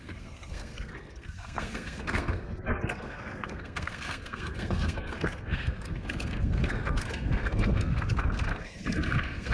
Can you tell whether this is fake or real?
fake